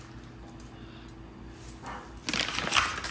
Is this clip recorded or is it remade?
recorded